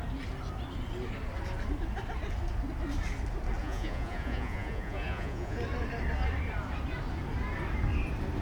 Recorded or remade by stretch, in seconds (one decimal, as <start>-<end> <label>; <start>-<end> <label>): 0.0-3.6 recorded; 3.6-5.6 remade; 5.6-8.4 recorded